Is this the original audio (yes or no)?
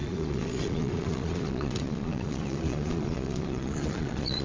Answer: no